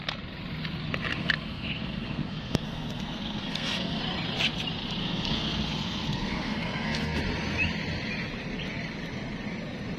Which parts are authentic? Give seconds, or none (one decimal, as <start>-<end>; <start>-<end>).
0.0-1.2; 4.0-5.0; 7.2-10.0